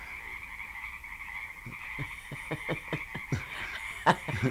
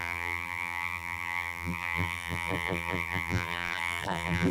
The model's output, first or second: second